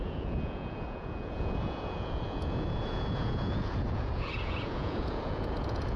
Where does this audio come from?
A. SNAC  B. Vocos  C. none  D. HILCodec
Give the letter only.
B